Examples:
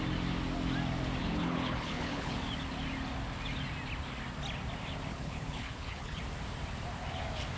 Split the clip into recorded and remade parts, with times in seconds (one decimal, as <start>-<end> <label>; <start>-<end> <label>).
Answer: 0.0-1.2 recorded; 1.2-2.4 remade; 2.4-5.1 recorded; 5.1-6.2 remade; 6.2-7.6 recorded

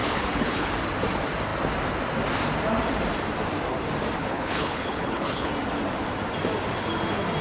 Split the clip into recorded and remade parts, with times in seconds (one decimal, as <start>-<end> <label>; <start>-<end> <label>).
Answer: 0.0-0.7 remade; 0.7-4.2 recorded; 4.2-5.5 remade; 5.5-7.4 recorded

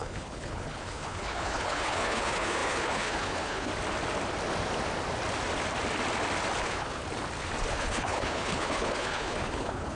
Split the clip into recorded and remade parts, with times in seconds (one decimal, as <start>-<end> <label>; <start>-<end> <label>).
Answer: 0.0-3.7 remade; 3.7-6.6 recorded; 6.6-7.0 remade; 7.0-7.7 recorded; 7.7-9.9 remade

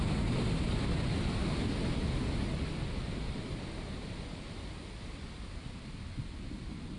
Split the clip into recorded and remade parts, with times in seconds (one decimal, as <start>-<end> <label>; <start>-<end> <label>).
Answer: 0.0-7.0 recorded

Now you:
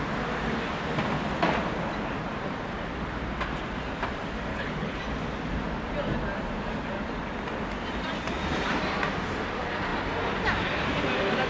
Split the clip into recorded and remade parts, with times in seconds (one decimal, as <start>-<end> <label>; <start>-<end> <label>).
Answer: 0.0-4.5 recorded; 4.5-5.0 remade; 5.0-11.5 recorded